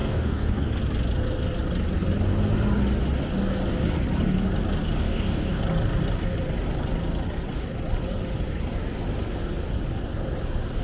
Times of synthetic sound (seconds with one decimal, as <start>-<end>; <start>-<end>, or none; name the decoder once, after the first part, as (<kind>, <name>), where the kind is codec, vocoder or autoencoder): 0.0-0.7 (codec, DAC); 5.0-5.6